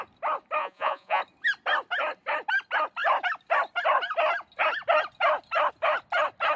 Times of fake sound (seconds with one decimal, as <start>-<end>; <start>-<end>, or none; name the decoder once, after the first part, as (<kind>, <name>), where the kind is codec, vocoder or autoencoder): 0.6-1.2 (vocoder, Vocos)